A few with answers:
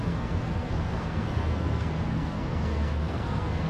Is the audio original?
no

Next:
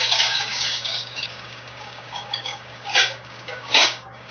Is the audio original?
no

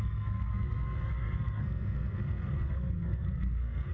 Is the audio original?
no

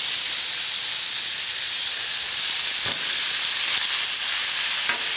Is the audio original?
yes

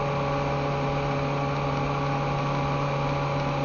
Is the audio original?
yes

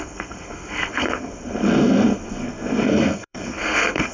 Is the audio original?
no